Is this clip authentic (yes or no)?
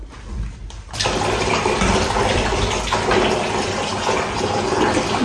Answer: no